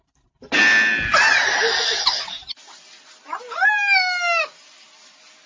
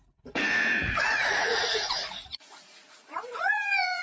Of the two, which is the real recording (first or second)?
first